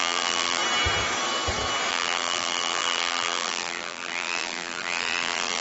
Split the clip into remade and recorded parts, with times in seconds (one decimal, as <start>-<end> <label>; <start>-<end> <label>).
0.0-0.6 remade; 0.6-1.9 recorded; 1.9-5.6 remade